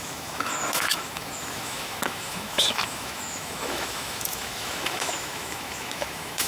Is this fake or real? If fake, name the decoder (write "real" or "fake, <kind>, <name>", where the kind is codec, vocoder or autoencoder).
fake, autoencoder, DAC-VAE